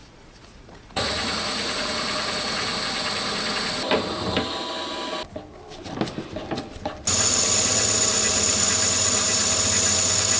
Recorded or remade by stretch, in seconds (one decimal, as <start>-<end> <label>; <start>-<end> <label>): 0.0-2.7 remade; 2.7-10.4 recorded